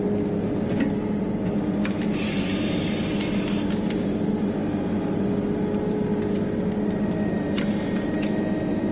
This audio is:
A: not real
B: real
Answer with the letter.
B